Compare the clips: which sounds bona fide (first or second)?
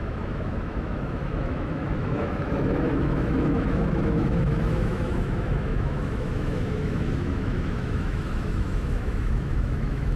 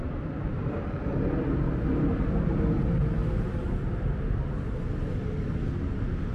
second